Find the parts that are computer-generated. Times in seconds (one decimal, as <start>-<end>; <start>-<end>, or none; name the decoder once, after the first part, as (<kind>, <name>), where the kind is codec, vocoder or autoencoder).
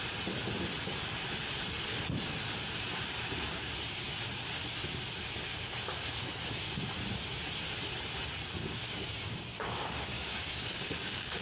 8.6-11.4 (codec, DAC)